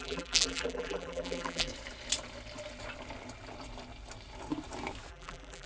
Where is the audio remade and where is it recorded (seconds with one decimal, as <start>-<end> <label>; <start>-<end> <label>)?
0.0-1.7 remade; 1.7-5.1 recorded; 5.1-5.7 remade